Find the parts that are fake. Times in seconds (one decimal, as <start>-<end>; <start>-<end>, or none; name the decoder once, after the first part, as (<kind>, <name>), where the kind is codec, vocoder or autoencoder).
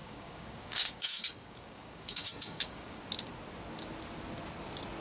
0.0-3.0 (codec, DAC)